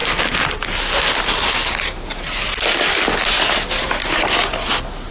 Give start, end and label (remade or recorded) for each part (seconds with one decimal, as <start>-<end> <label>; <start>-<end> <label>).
0.0-5.1 recorded